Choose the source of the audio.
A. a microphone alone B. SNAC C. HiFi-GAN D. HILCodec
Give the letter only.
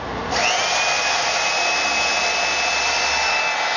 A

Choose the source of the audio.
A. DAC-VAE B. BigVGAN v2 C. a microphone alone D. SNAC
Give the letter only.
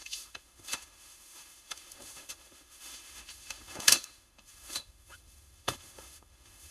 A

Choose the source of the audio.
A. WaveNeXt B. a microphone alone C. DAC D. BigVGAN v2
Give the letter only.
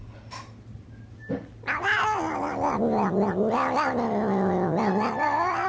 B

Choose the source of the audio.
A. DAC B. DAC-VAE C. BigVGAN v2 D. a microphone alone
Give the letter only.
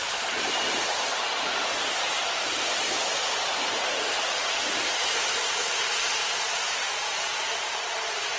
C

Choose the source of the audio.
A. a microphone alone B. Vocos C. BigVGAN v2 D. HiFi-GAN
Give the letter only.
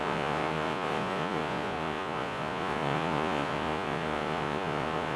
B